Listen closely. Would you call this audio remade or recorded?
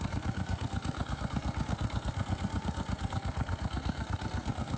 remade